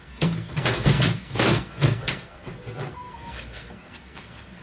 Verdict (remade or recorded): remade